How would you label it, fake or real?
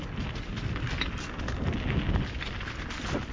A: real